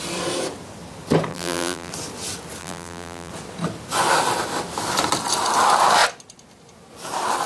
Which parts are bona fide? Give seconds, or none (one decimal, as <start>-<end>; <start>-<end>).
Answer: 0.0-1.3; 1.9-2.6; 3.3-7.5